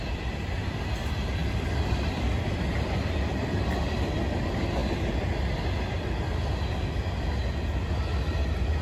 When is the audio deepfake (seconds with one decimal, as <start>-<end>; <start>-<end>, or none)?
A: 1.4-3.6